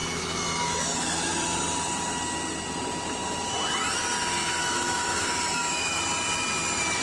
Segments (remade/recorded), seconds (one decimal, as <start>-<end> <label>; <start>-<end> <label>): 0.0-1.4 remade; 1.4-4.6 recorded; 4.6-6.0 remade; 6.0-7.0 recorded